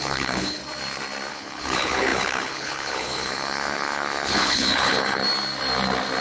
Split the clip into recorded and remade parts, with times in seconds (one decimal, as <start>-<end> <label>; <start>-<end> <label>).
0.0-0.6 remade; 0.6-1.3 recorded; 1.3-5.2 remade; 5.2-6.2 recorded